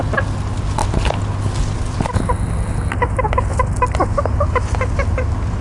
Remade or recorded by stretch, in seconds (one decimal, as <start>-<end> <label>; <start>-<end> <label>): 0.0-5.6 recorded